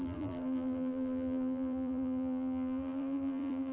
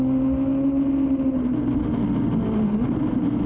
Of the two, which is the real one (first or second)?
second